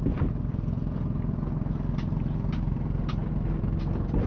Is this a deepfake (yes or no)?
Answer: no